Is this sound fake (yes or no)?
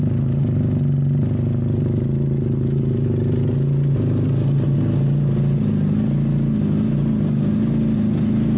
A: no